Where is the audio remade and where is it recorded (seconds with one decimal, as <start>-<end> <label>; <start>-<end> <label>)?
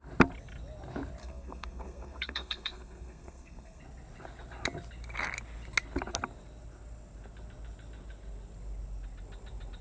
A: 0.0-1.2 recorded; 1.2-3.8 remade; 3.8-9.8 recorded